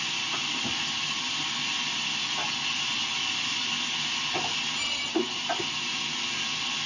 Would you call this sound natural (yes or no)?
yes